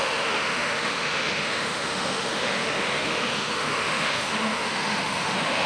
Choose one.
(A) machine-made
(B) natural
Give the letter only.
A